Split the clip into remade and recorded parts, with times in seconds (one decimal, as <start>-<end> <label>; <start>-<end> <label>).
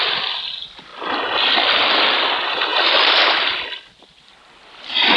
0.0-2.7 recorded; 2.7-4.3 remade; 4.3-5.2 recorded